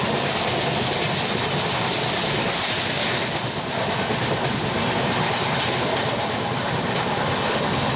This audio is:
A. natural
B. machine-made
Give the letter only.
A